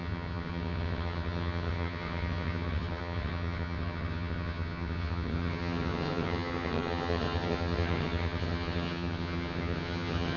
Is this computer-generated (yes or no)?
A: yes